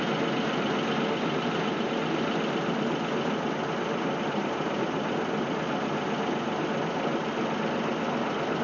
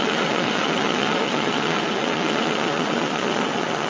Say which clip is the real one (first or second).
first